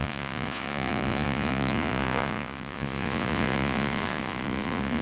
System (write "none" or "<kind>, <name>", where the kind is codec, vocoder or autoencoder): vocoder, Vocos